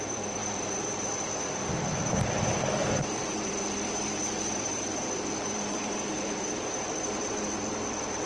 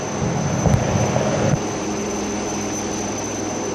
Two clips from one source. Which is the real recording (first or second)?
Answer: second